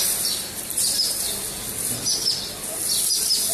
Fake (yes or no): no